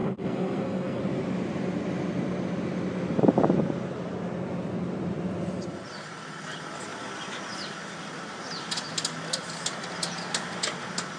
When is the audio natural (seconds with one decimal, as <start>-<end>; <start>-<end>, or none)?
1.0-11.2